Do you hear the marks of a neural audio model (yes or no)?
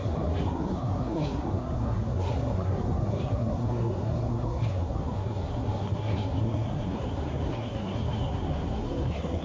yes